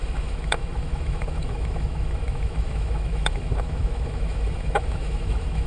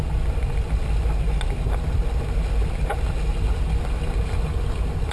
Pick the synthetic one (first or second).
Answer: first